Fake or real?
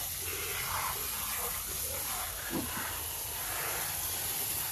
real